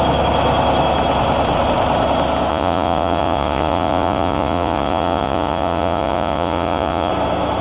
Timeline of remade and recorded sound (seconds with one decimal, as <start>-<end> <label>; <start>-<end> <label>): 0.0-2.5 recorded; 2.5-7.1 remade; 7.1-7.6 recorded